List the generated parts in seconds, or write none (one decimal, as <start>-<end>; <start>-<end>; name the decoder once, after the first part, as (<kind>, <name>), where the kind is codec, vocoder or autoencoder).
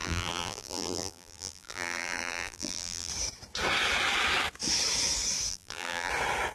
0.0-3.1 (vocoder, BigVGAN v2); 5.5-6.1